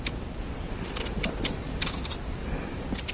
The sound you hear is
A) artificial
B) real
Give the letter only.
B